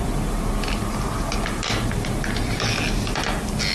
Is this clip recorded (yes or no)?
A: yes